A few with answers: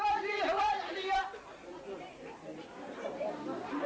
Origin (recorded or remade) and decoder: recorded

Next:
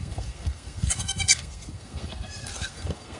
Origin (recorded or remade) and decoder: remade, codec, SNAC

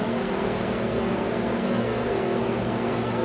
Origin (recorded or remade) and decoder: remade, codec, SNAC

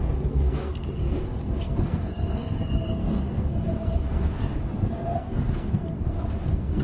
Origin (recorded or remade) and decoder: remade, codec, SNAC